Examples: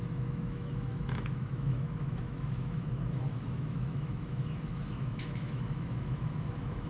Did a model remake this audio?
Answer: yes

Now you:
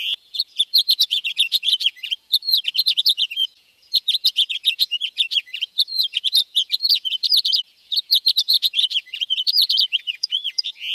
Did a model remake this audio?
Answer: yes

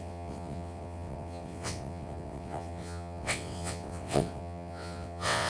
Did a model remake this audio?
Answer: yes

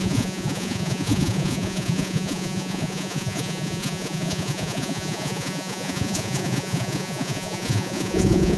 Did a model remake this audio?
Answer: yes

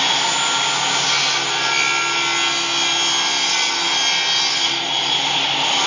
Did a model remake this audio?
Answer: no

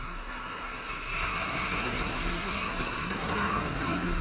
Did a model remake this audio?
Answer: yes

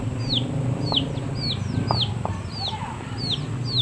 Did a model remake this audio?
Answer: no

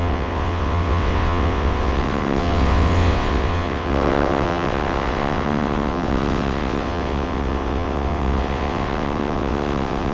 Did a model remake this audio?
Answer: yes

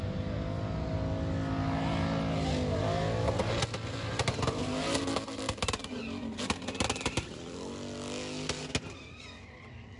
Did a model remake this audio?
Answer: no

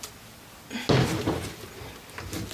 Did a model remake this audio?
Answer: no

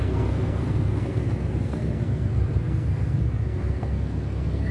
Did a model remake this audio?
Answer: yes